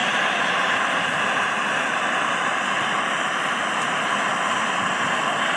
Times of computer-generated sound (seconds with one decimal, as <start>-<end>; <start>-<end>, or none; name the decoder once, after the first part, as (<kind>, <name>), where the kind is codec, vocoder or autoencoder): 0.0-3.4 (vocoder, BigVGAN v2)

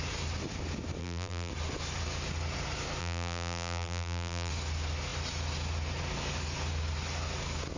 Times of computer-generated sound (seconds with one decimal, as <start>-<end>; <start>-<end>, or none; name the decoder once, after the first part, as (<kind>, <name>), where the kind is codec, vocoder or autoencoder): 1.0-1.5 (vocoder, BigVGAN v2); 3.0-4.5

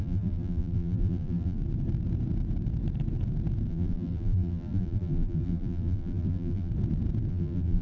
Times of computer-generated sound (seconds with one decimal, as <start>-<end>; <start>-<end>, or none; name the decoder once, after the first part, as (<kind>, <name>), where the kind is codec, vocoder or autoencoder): 0.0-1.6 (vocoder, BigVGAN v2); 3.7-6.7; 7.3-7.8